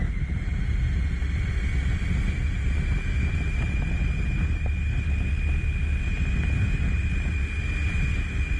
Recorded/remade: recorded